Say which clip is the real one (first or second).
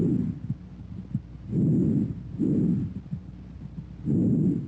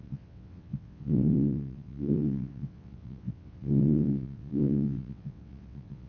first